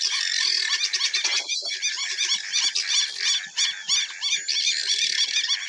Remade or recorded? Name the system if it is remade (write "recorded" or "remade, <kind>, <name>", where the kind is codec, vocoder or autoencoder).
remade, vocoder, BigVGAN v2